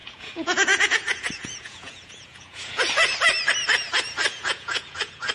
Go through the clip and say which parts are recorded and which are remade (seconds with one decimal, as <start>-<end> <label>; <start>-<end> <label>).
0.0-2.9 remade; 2.9-4.3 recorded; 4.3-5.3 remade